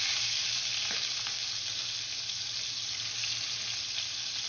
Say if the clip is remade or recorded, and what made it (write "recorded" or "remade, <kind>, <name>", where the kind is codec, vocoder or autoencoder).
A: recorded